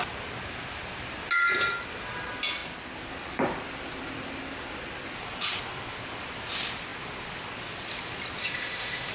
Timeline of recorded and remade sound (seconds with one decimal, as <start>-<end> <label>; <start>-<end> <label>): 0.0-8.4 recorded; 8.4-9.1 remade